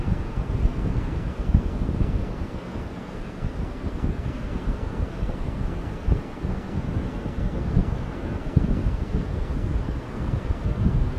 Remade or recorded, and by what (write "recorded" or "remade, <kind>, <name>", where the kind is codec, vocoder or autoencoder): remade, codec, SNAC